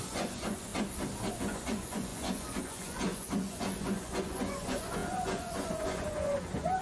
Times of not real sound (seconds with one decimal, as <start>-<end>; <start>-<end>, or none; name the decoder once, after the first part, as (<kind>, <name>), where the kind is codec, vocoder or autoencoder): 0.0-0.7 (vocoder, Vocos); 1.3-6.8